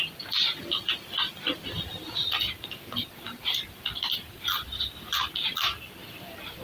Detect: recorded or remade remade